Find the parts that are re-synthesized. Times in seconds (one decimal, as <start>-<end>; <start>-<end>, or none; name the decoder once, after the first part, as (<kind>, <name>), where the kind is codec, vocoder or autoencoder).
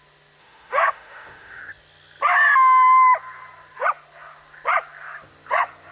0.4-1.6 (autoencoder, DAC-VAE)